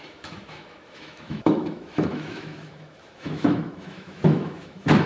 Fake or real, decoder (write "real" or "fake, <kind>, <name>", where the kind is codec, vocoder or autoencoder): fake, autoencoder, DAC-VAE